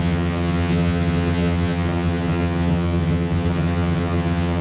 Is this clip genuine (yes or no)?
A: no